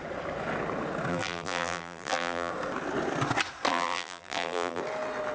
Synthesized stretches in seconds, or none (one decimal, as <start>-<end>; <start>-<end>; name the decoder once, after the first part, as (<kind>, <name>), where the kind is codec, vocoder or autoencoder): 1.1-2.5 (vocoder, BigVGAN v2); 3.7-4.8